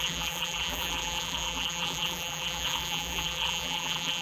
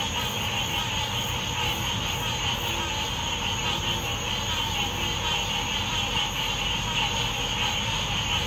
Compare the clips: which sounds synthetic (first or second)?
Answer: first